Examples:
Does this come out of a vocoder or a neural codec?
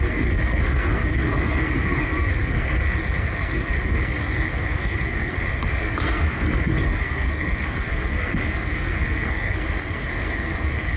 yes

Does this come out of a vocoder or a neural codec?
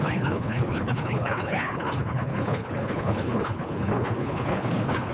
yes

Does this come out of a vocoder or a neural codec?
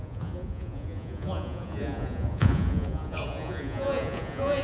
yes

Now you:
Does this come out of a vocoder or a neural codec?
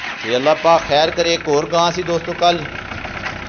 no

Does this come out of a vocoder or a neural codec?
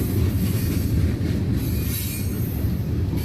no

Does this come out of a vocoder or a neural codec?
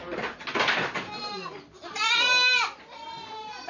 no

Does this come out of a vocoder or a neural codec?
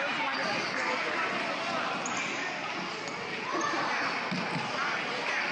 no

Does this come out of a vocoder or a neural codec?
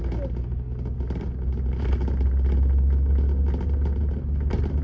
no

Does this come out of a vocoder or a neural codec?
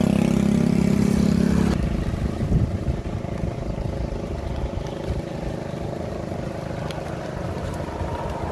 no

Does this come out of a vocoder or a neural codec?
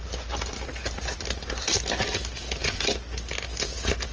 no